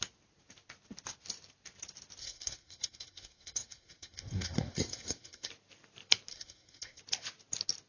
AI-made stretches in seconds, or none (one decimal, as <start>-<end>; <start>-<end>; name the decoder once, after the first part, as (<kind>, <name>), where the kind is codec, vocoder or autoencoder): 2.2-5.5 (codec, SNAC); 6.3-7.0

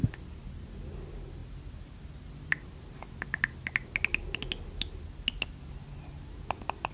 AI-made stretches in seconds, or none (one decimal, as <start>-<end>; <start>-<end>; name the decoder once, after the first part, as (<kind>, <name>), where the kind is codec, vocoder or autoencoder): none

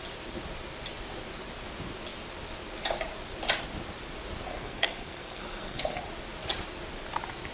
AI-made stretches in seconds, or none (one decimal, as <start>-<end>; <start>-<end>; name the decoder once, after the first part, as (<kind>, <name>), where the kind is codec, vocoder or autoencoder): 4.5-6.0 (codec, SNAC)

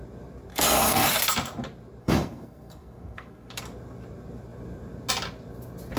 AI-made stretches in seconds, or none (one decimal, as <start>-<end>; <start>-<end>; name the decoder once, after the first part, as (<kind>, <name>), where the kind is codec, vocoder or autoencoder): 0.5-1.1 (codec, SNAC); 2.0-3.6

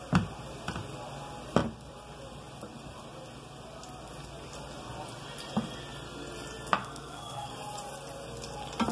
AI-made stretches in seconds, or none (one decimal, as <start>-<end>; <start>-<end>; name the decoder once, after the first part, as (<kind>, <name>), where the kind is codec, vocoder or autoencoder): 6.8-7.5 (codec, SNAC)